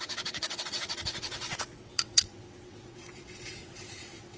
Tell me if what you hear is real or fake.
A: fake